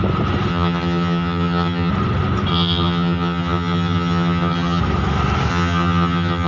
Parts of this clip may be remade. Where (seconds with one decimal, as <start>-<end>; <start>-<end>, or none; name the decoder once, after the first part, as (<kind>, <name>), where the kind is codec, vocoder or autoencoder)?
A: 0.5-1.9 (vocoder, HiFi-GAN); 2.5-4.8; 5.5-6.5